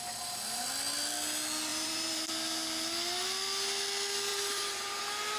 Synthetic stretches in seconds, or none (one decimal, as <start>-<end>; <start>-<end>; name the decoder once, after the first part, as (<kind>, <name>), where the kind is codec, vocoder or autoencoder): 1.7-2.3 (vocoder, BigVGAN v2); 4.3-5.0